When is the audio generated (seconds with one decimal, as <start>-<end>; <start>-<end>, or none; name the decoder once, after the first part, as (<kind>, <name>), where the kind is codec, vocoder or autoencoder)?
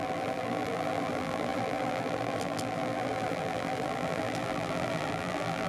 0.0-5.7 (vocoder, BigVGAN v2)